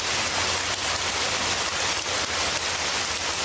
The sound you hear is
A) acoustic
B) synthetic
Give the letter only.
A